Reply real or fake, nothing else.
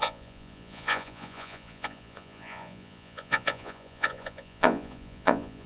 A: fake